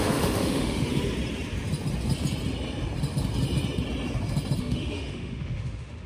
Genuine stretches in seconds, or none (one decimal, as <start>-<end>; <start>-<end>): 0.9-4.6